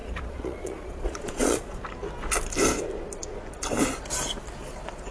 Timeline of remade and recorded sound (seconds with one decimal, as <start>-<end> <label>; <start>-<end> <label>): 0.0-1.8 remade; 1.8-5.1 recorded